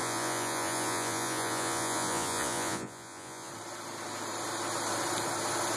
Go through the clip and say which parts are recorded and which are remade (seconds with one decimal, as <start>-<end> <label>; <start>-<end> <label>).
0.0-3.5 remade; 3.5-5.8 recorded